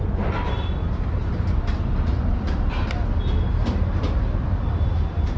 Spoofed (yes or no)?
no